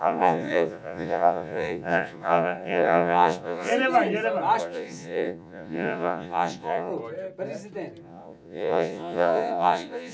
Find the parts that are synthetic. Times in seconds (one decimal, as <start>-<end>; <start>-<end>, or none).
0.0-3.7; 4.6-6.9; 8.0-10.1